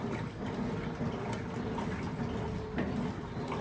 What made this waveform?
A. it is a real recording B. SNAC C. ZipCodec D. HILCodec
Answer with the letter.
A